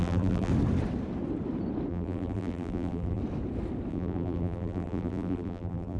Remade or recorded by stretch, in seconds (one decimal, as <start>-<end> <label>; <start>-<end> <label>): 0.0-0.5 remade; 0.5-1.9 recorded; 1.9-3.2 remade; 3.2-3.9 recorded; 3.9-6.0 remade